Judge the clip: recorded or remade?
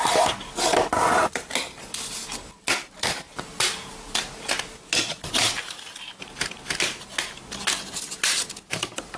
recorded